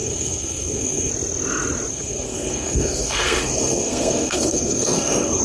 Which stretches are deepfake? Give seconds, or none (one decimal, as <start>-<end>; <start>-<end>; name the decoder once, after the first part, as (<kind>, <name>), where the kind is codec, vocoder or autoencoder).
0.0-1.1 (codec, SNAC); 1.9-5.4